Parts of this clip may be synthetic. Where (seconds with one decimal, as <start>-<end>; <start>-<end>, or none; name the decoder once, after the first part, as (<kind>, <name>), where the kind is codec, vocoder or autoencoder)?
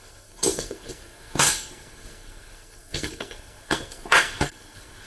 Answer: 0.0-5.1 (codec, SNAC)